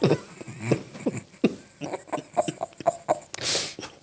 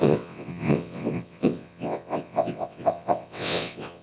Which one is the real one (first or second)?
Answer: first